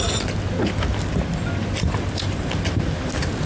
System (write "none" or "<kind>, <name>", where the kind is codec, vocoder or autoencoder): none